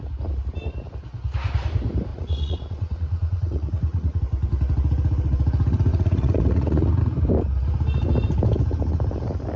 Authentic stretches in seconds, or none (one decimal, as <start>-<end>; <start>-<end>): 0.0-2.1; 4.2-5.9; 7.0-9.6